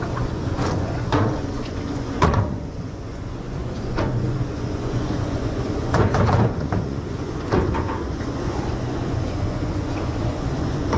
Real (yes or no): no